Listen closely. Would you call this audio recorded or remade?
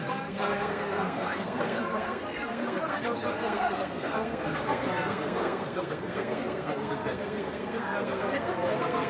remade